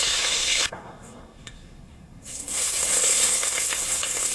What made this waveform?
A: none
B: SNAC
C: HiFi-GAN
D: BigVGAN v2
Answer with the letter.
B